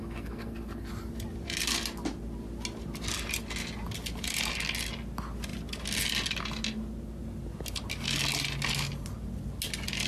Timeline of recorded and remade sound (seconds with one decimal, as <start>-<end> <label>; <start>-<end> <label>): 0.0-0.9 remade; 0.9-10.1 recorded